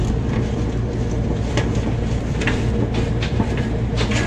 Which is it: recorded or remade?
remade